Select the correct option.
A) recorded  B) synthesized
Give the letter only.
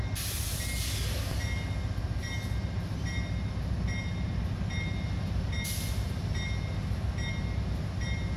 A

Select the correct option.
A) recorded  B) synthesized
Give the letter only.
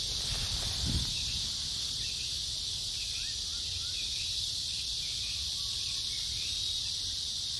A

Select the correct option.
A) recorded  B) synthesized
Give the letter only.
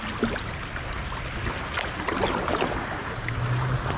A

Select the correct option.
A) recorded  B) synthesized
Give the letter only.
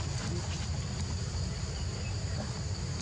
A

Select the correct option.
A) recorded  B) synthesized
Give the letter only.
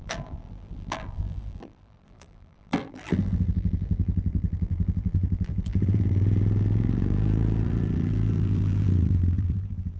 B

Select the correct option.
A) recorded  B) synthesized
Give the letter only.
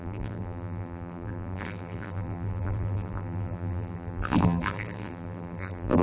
B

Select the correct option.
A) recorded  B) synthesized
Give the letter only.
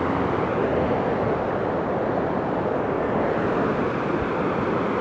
A